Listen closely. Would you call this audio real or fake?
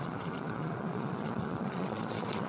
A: fake